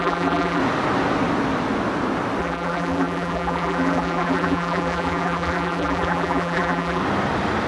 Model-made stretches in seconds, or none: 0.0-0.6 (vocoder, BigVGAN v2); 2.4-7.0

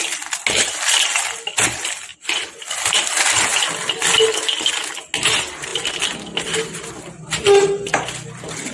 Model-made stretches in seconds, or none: none